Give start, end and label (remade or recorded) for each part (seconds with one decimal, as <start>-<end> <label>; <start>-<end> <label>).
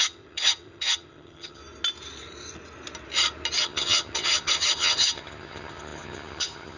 0.0-1.6 remade; 1.6-3.6 recorded; 3.6-6.8 remade